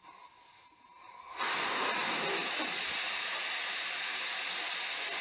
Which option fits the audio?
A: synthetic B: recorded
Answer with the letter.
B